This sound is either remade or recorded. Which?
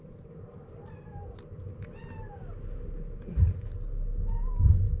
recorded